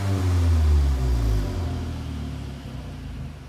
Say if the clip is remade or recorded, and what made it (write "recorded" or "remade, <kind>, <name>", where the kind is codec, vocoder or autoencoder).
recorded